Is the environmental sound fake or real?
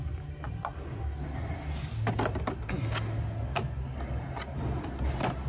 real